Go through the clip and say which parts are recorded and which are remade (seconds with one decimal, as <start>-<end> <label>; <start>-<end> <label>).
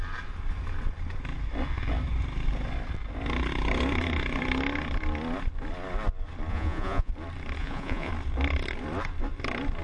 0.0-6.5 recorded; 6.5-7.1 remade; 7.1-7.6 recorded; 7.6-8.1 remade; 8.1-9.8 recorded